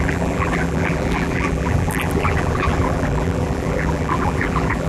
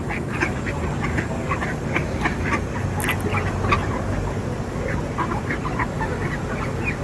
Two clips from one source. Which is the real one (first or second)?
second